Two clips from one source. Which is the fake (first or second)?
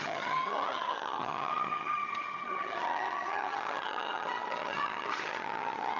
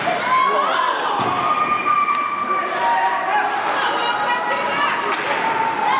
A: first